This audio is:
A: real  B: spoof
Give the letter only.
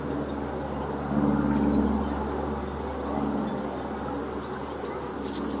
A